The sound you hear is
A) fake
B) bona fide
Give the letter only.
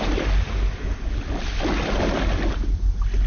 B